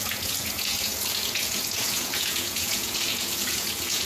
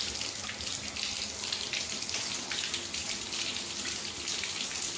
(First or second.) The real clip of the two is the second